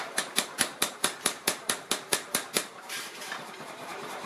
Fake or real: fake